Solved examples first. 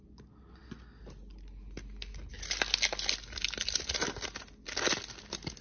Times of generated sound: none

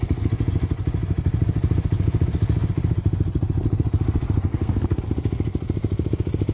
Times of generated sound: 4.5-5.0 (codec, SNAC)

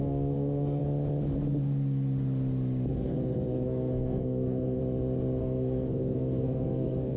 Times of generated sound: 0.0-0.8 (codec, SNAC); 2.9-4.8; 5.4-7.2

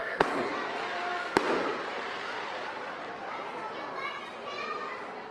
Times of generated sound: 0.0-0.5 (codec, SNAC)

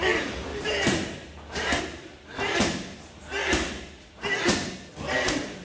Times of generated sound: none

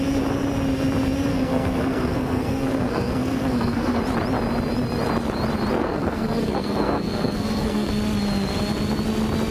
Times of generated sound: 1.3-4.0 (codec, SNAC); 5.8-7.9